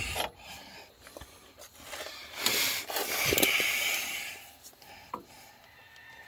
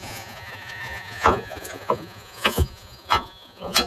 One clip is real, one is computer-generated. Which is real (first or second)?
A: first